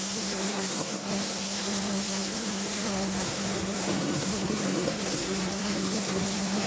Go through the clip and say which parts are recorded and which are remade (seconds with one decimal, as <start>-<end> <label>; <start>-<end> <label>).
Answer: 0.0-6.7 remade